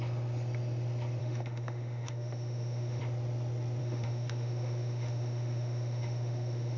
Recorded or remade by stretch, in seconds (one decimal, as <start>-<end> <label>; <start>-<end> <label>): 0.0-1.2 recorded; 1.2-3.0 remade; 3.0-3.8 recorded; 3.8-6.8 remade